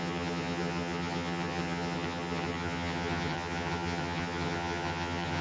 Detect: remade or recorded remade